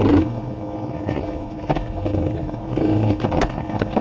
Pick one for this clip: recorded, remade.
remade